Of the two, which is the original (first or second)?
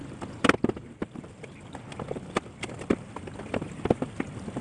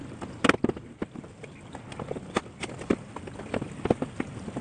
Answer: second